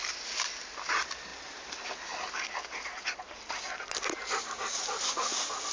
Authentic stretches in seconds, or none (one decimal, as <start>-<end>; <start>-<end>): 0.0-5.7